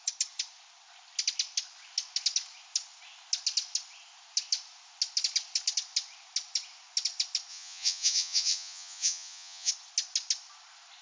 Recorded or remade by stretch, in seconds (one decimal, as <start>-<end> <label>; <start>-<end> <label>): 0.0-7.5 recorded; 7.5-9.7 remade; 9.7-11.0 recorded